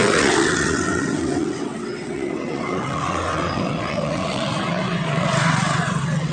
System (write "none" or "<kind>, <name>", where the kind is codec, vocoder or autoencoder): vocoder, WaveNeXt